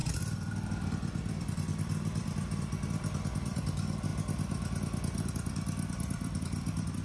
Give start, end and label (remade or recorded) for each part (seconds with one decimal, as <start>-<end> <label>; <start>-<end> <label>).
0.0-4.1 remade; 4.1-5.5 recorded; 5.5-7.0 remade